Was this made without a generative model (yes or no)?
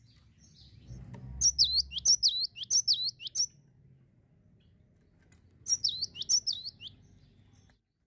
yes